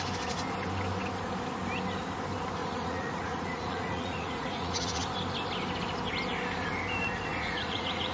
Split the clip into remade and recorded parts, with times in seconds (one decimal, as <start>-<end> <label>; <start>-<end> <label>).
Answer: 0.0-2.6 recorded; 2.6-5.0 remade; 5.0-7.3 recorded; 7.3-8.1 remade